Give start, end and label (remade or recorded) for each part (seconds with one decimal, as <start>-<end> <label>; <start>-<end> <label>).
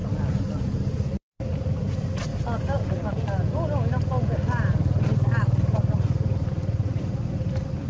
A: 0.0-1.2 recorded; 1.2-2.3 remade; 2.3-7.0 recorded; 7.0-7.9 remade